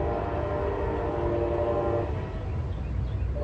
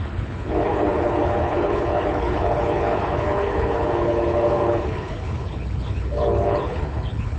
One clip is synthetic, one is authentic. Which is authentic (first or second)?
first